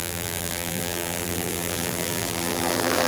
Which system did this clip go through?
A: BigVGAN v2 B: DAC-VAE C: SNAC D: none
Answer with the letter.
A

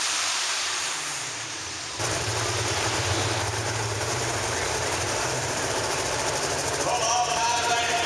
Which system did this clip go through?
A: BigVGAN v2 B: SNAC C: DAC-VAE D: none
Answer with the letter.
A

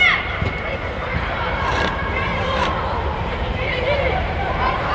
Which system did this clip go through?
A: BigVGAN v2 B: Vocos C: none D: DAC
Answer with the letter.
A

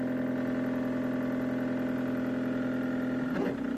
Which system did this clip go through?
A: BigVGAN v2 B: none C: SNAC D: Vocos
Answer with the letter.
B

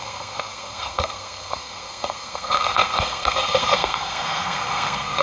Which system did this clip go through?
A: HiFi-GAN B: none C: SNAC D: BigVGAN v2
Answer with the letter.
C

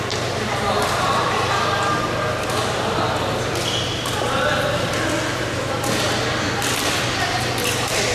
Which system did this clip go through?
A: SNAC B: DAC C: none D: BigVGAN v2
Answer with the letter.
C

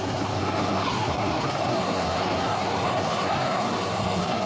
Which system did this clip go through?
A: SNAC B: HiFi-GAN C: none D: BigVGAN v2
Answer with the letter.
A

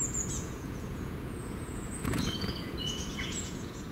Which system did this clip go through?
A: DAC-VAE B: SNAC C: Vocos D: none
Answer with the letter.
C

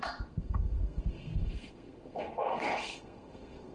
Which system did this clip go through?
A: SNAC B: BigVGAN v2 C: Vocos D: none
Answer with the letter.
A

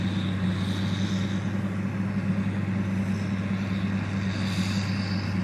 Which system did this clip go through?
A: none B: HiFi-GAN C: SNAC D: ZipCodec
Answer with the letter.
A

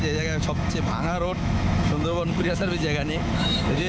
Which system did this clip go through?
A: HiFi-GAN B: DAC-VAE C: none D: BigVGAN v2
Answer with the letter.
B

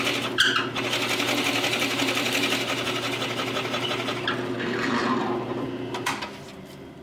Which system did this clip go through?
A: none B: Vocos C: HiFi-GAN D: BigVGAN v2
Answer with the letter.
A